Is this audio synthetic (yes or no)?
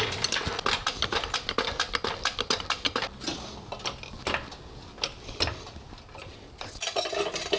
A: no